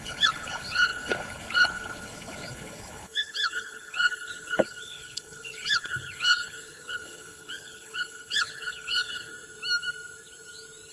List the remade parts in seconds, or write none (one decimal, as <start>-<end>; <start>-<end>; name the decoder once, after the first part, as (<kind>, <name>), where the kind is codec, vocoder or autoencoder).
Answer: 0.0-9.3 (codec, HILCodec)

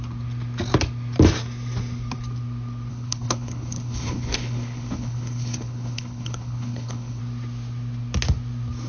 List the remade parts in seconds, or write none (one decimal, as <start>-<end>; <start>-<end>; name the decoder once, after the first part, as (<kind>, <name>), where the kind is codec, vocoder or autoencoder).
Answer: 2.9-7.2 (codec, HILCodec)